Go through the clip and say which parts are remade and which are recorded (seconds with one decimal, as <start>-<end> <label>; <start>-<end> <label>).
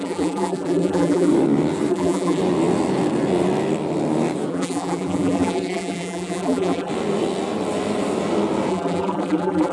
0.0-1.3 remade; 1.3-1.9 recorded; 1.9-2.4 remade; 2.4-4.5 recorded; 4.5-6.9 remade; 6.9-8.7 recorded; 8.7-9.7 remade